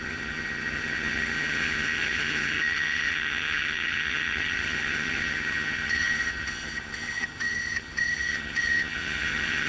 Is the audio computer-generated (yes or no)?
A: yes